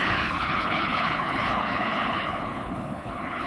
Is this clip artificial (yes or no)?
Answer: yes